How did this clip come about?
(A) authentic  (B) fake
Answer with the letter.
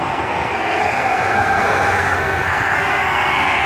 B